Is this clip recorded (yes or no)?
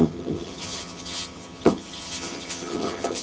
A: no